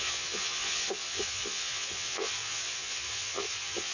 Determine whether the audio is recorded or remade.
remade